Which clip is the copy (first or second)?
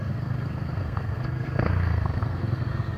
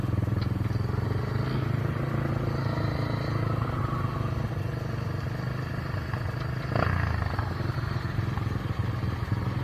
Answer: first